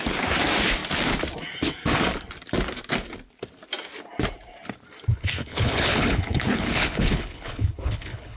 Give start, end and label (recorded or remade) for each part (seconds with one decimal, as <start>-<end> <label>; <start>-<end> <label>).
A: 0.0-5.1 recorded; 5.1-8.4 remade